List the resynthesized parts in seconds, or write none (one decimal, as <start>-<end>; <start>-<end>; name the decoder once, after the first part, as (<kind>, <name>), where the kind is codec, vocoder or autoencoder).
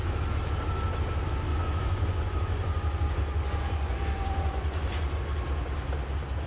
1.5-5.2 (vocoder, Vocos)